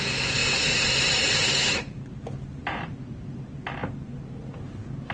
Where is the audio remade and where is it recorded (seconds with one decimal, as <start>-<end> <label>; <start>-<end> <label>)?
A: 0.0-0.4 recorded; 0.4-1.4 remade; 1.4-2.6 recorded; 2.6-3.5 remade; 3.5-5.1 recorded